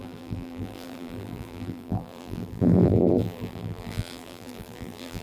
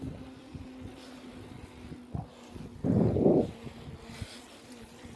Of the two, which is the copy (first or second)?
first